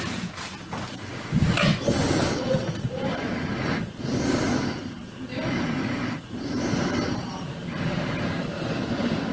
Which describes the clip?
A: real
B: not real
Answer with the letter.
B